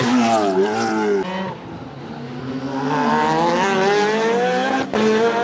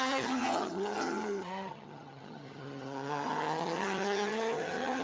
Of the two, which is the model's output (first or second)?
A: second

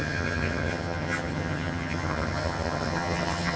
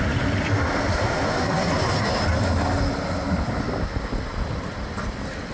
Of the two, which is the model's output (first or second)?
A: first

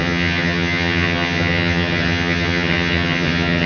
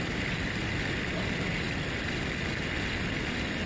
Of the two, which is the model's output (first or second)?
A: first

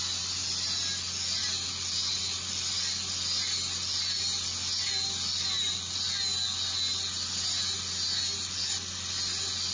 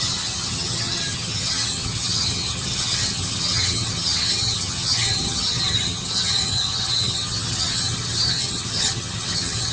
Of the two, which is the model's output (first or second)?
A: second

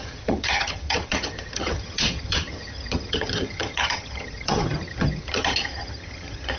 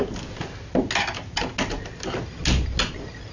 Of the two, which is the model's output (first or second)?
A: first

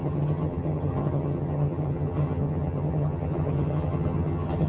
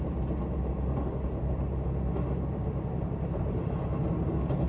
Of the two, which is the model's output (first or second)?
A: first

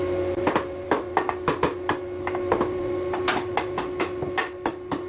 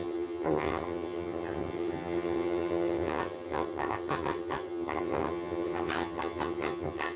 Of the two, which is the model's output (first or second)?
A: second